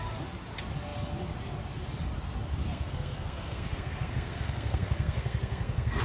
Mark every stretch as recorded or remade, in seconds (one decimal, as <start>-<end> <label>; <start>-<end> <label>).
0.0-2.7 recorded; 2.7-6.0 remade